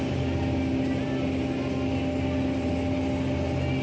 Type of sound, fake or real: real